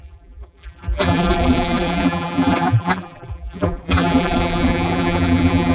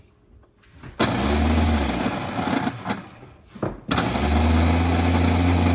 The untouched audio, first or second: second